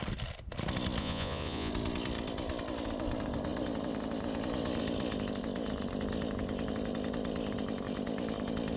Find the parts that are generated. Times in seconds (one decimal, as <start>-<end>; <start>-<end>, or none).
1.0-1.7